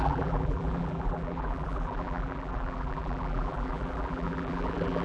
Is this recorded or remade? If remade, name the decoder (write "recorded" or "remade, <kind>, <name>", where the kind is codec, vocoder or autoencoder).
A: remade, vocoder, BigVGAN v2